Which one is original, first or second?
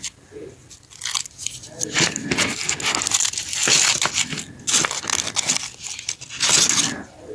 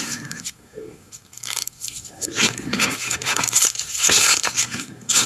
first